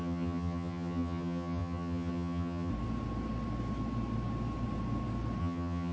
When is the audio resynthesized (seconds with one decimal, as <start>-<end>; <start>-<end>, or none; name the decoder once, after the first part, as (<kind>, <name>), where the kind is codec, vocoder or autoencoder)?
0.0-2.7 (vocoder, HiFi-GAN); 5.4-5.9